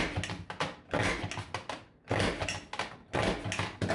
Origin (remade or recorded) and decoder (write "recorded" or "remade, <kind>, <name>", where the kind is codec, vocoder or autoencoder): recorded